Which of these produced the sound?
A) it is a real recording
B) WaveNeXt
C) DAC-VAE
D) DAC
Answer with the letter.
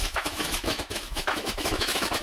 C